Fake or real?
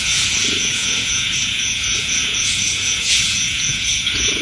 fake